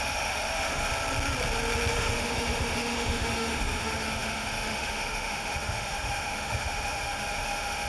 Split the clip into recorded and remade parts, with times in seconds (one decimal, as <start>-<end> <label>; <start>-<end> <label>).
0.0-0.9 remade; 0.9-1.9 recorded; 1.9-7.9 remade